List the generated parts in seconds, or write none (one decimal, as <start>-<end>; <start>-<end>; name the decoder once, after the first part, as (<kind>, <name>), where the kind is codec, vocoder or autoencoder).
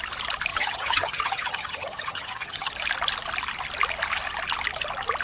0.5-2.7 (vocoder, HiFi-GAN)